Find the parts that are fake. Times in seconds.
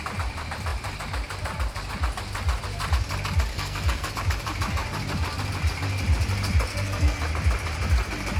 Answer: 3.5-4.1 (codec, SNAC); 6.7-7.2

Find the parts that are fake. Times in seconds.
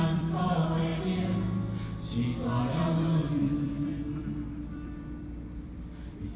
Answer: 0.0-0.9 (vocoder, BigVGAN v2); 2.6-6.4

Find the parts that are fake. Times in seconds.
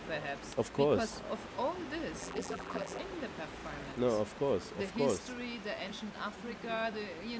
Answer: 2.2-3.0 (vocoder, BigVGAN v2)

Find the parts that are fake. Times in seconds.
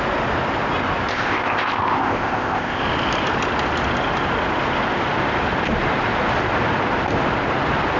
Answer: 1.1-2.8 (codec, ZipCodec)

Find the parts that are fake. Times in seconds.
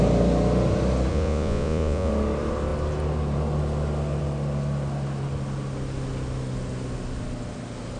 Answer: 1.1-2.1 (vocoder, Vocos)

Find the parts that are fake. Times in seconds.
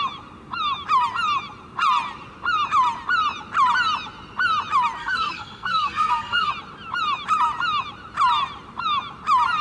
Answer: 5.0-6.5 (codec, SNAC)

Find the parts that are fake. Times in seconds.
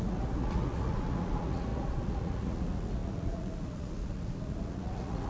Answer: 0.0-5.3 (vocoder, Vocos)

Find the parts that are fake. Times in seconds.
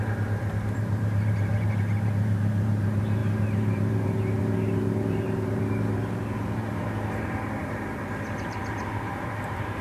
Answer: 0.0-9.8 (vocoder, BigVGAN v2)